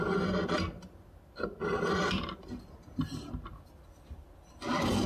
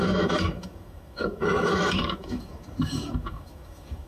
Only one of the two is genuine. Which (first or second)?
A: first